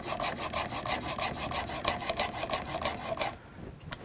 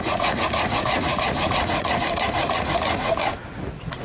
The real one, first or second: first